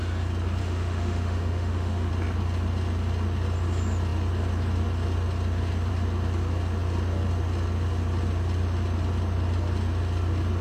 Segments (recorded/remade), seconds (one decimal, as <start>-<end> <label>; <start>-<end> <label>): 0.0-0.6 recorded; 0.6-2.1 remade; 2.1-10.6 recorded